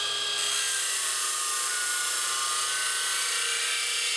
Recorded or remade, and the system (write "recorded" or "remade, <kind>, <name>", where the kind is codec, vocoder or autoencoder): recorded